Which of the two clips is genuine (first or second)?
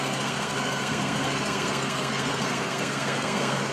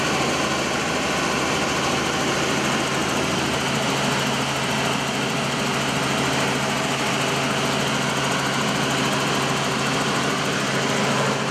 second